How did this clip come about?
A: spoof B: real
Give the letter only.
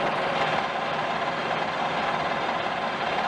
B